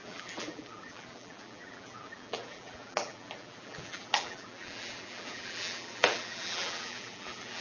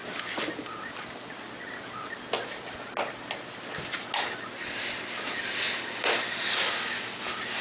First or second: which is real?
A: second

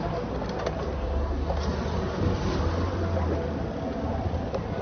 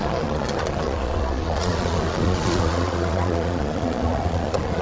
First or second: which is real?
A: first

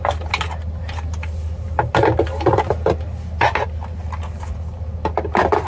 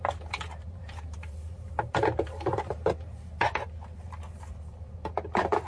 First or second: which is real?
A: first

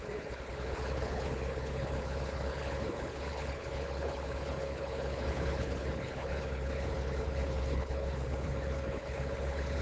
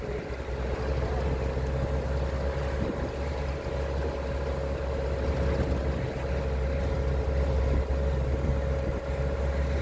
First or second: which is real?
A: second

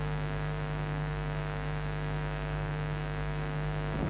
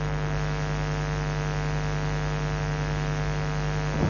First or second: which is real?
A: second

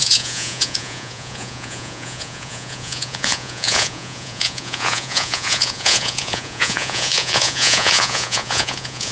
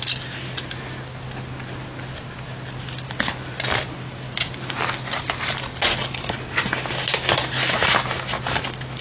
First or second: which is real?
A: second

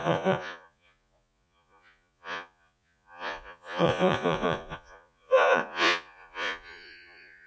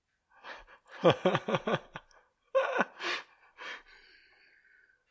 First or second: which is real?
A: second